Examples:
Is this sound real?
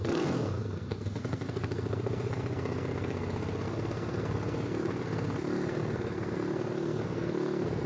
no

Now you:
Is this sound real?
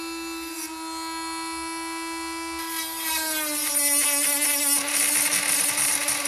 yes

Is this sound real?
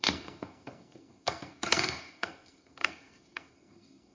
no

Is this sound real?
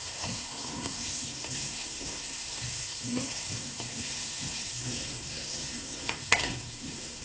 no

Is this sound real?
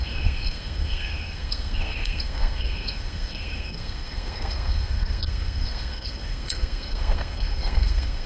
no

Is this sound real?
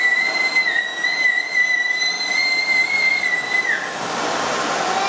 yes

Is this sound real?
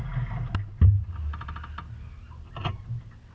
yes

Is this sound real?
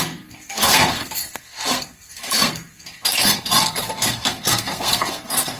no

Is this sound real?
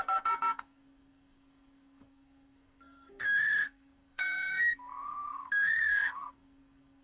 no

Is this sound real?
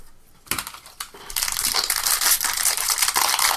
yes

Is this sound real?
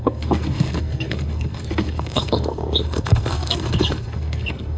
no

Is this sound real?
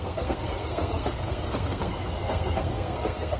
no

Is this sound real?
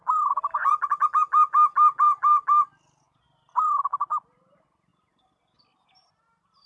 yes